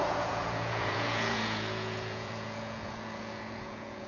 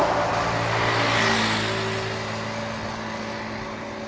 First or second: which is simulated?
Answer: first